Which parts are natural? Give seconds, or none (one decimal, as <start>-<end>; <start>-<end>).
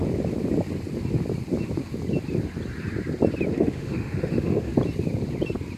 0.0-3.5; 4.7-5.8